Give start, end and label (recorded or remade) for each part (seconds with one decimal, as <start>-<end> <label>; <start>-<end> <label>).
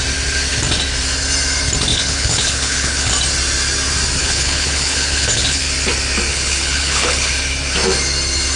0.0-1.9 recorded; 1.9-3.1 remade; 3.1-4.2 recorded; 4.2-5.6 remade; 5.6-6.3 recorded; 6.3-7.3 remade; 7.3-8.6 recorded